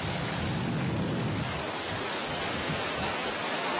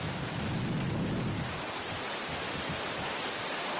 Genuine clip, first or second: second